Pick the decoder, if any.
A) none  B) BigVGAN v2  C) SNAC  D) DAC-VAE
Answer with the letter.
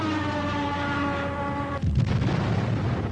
A